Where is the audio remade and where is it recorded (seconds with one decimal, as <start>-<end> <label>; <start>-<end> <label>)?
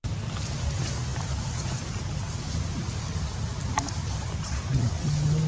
0.0-4.0 recorded; 4.0-4.9 remade; 4.9-5.5 recorded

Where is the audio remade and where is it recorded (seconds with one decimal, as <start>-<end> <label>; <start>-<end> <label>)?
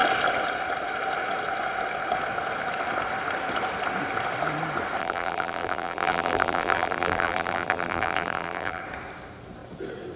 0.0-5.0 recorded; 5.0-8.8 remade; 8.8-10.2 recorded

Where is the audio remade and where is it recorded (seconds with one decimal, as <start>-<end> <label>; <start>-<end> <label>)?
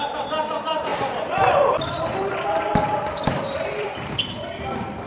0.0-0.9 recorded; 0.9-4.0 remade; 4.0-5.1 recorded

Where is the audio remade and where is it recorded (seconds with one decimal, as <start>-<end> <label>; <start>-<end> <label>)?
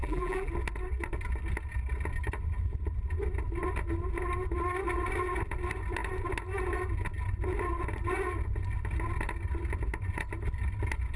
0.0-0.5 remade; 0.5-11.2 recorded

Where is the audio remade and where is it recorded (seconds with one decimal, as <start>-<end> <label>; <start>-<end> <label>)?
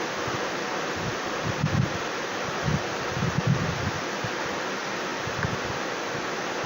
0.0-1.1 recorded; 1.1-2.2 remade; 2.2-6.7 recorded